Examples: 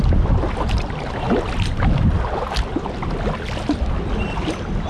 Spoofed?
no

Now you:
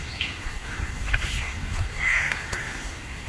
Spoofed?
yes